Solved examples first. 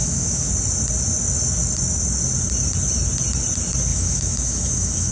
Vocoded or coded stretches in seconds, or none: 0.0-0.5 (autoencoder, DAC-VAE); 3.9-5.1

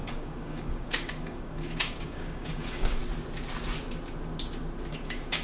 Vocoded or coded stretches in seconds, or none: 0.0-3.0 (codec, DAC); 4.9-5.4

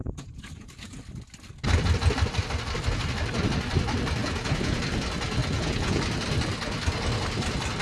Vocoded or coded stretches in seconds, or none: 0.0-1.0 (vocoder, Vocos); 4.2-4.8; 5.4-6.0

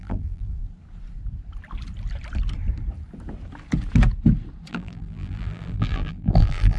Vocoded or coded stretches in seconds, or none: 0.0-0.6 (vocoder, BigVGAN v2); 4.7-6.8

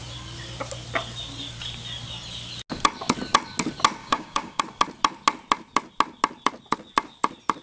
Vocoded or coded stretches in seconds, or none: 4.0-4.6 (codec, DAC)

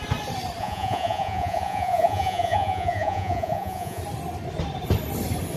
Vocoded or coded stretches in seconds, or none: 0.6-4.0 (vocoder, Vocos)